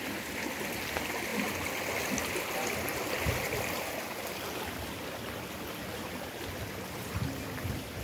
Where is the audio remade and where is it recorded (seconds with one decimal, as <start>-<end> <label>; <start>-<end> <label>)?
0.0-8.0 recorded